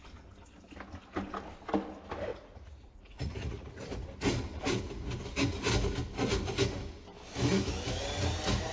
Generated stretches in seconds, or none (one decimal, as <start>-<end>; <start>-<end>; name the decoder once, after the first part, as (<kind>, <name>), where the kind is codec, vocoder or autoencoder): 2.3-3.8 (vocoder, Vocos)